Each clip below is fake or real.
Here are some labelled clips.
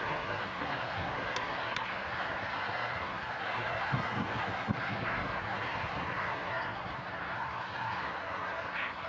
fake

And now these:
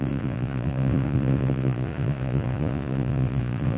fake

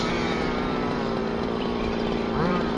fake